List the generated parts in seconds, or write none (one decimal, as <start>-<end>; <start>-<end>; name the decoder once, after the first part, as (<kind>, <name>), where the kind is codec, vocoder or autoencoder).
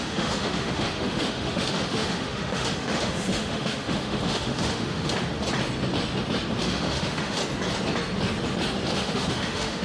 0.0-5.3 (autoencoder, DAC-VAE); 6.6-7.4; 8.9-9.8